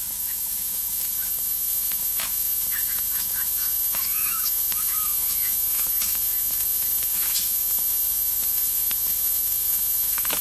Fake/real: fake